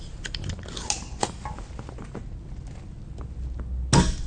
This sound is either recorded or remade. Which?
recorded